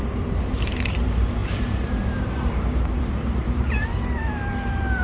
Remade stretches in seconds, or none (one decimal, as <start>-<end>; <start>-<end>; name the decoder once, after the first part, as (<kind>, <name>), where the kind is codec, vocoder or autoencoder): 0.0-5.0 (vocoder, BigVGAN v2)